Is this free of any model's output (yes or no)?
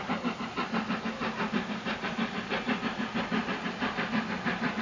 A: yes